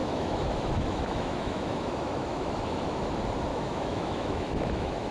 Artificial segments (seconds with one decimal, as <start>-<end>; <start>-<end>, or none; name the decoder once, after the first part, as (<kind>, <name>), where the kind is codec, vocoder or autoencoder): 0.0-3.1 (autoencoder, DAC-VAE); 3.5-5.1